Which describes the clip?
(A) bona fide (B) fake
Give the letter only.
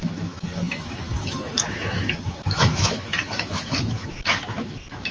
B